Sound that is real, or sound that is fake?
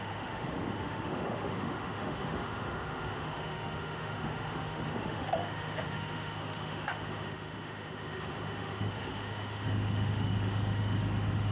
fake